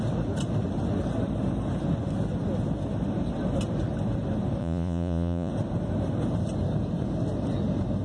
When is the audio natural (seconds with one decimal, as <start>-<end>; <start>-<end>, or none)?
0.0-4.6; 5.5-8.0